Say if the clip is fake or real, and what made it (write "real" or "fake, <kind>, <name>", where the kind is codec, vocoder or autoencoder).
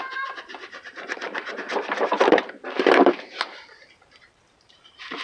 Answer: fake, vocoder, BigVGAN v2